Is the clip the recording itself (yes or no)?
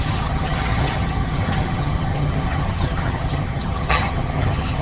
no